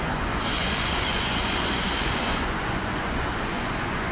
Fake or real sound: fake